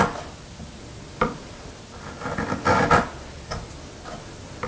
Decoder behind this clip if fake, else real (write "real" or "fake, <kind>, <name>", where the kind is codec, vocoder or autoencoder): real